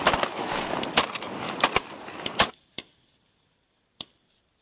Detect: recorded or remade recorded